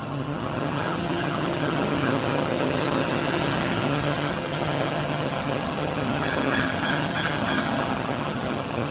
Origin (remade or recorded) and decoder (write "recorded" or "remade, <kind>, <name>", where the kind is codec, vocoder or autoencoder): remade, vocoder, HiFi-GAN